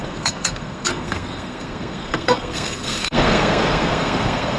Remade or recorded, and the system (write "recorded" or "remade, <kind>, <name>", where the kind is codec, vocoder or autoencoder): remade, codec, SNAC